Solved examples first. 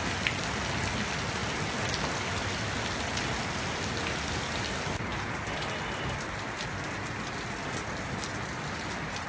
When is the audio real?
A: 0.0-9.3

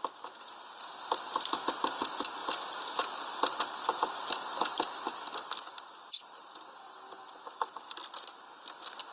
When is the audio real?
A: 0.0-9.1

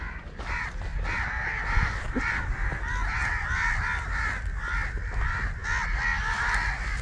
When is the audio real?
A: 0.0-7.0